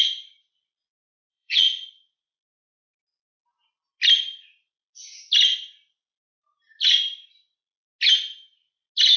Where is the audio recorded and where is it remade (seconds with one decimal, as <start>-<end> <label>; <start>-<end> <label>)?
0.0-1.3 recorded; 1.3-2.7 remade; 2.7-9.2 recorded